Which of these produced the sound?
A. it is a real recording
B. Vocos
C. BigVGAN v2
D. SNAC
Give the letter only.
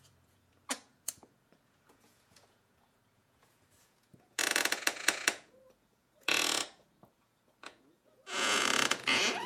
B